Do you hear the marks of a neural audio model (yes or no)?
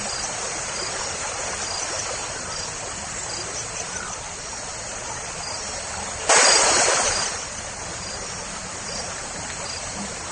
no